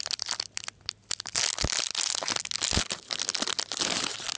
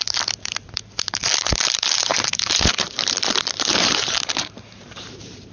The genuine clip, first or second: first